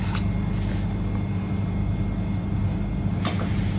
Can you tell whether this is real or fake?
real